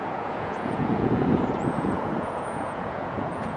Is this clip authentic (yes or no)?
no